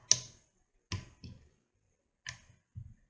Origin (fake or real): real